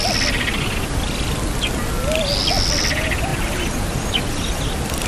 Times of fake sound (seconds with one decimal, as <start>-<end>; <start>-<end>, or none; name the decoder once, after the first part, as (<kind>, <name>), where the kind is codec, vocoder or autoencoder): none